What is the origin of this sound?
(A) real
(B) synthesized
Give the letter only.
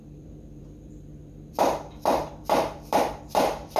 B